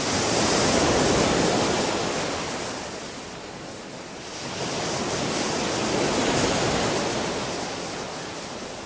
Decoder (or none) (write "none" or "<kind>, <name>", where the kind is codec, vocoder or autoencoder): none